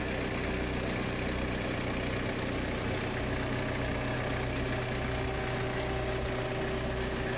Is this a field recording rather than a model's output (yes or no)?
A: yes